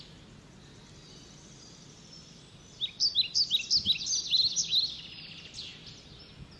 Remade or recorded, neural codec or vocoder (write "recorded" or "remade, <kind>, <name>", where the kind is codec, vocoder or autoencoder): recorded